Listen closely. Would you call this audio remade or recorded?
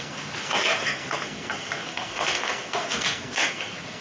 remade